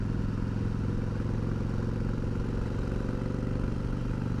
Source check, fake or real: real